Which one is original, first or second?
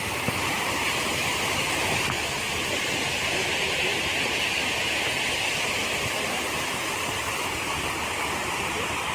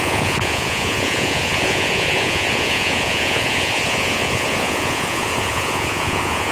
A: first